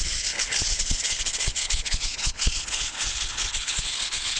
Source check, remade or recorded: remade